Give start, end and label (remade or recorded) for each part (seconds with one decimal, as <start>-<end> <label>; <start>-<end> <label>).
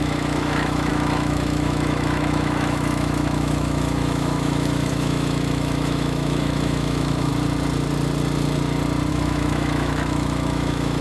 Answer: 0.0-7.3 remade; 7.3-9.1 recorded; 9.1-11.0 remade